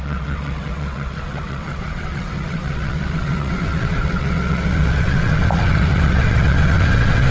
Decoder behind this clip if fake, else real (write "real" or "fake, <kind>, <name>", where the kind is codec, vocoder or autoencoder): fake, vocoder, WaveNeXt